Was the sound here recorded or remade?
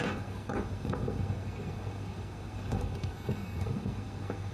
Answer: remade